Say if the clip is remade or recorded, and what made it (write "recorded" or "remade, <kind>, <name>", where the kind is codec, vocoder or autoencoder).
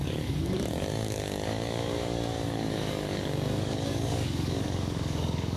remade, codec, DAC